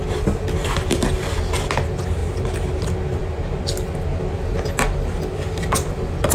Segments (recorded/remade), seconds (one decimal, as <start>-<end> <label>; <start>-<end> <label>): 0.0-2.2 recorded; 2.2-2.7 remade; 2.7-6.3 recorded